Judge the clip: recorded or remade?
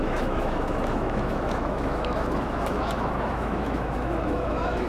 remade